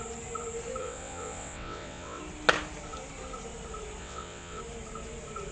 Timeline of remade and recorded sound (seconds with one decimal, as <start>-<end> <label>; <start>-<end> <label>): 0.0-0.8 recorded; 0.8-2.2 remade; 2.2-4.0 recorded; 4.0-4.6 remade; 4.6-5.5 recorded